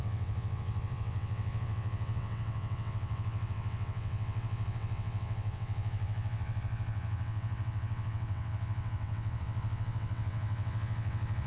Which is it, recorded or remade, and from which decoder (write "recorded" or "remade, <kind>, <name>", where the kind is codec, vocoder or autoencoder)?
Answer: remade, vocoder, WaveNeXt